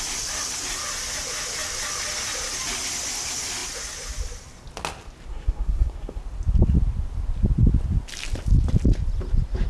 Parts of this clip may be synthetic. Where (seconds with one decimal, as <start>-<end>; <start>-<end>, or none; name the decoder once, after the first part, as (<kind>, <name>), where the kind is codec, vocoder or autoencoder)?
5.3-6.2 (codec, SNAC)